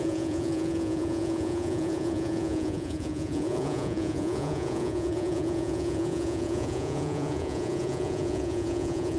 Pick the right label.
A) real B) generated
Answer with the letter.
B